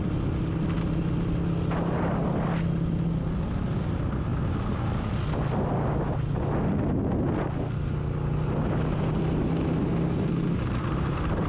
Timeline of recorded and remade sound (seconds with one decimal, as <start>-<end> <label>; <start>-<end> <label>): 0.0-11.5 recorded